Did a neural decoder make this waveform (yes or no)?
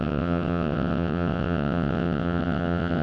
yes